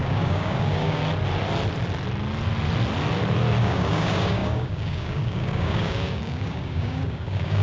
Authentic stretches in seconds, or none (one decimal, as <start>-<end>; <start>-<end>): 1.0-3.6